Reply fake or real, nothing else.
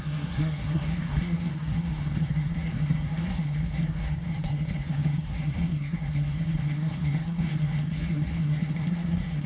fake